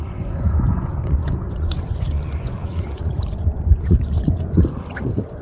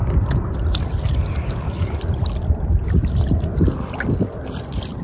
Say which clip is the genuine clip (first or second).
second